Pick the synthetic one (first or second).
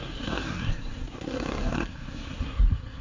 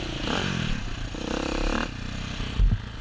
first